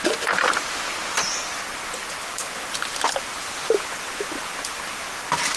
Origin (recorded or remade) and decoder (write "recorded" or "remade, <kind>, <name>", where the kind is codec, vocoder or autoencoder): recorded